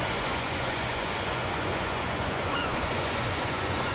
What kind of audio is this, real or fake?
fake